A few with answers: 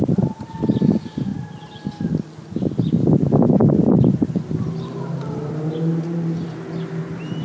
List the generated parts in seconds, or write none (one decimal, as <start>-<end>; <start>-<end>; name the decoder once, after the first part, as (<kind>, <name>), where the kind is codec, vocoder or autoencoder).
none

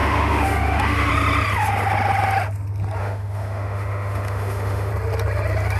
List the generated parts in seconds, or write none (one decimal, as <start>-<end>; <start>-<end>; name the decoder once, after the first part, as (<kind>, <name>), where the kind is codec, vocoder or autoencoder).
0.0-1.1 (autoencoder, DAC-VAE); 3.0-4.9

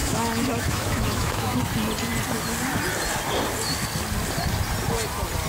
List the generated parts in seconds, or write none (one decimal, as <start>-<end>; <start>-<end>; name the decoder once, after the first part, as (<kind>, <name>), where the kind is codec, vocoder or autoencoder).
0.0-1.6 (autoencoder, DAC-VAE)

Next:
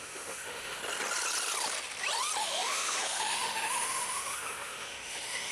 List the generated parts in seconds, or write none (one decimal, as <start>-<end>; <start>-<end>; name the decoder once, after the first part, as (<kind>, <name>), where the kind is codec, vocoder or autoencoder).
0.0-0.8 (autoencoder, DAC-VAE); 2.4-5.5

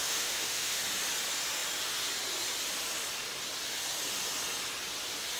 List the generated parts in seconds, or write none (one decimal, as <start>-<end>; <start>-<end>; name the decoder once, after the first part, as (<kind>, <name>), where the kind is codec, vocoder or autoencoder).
0.0-0.8 (autoencoder, DAC-VAE)